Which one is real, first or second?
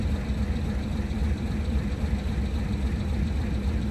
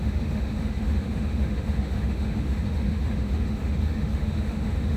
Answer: first